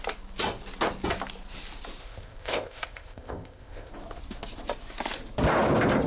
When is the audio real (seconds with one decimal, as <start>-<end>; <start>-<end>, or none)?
0.0-2.0; 3.9-6.1